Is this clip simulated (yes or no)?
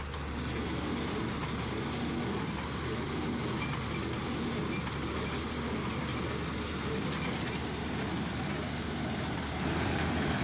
no